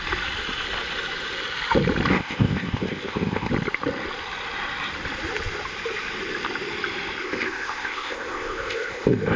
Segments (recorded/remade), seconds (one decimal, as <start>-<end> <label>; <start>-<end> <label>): 0.0-2.1 recorded; 2.1-3.5 remade; 3.5-7.2 recorded; 7.2-9.4 remade